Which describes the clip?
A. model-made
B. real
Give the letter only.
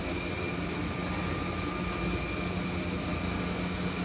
B